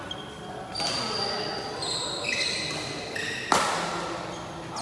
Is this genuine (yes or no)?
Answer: yes